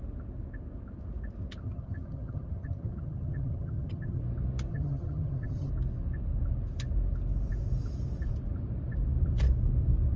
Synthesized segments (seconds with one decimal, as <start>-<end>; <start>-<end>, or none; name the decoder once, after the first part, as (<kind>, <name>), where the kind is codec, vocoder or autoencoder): 1.6-4.2 (vocoder, HiFi-GAN); 4.7-5.7